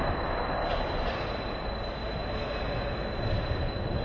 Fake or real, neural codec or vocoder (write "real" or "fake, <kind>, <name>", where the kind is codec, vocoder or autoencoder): real